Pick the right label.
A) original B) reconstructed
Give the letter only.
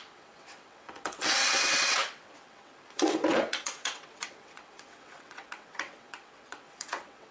B